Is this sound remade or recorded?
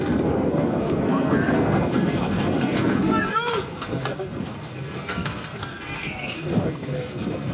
remade